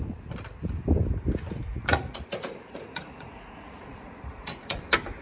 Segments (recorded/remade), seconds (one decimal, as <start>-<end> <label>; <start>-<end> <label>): 0.0-1.7 recorded; 1.7-4.8 remade; 4.8-5.2 recorded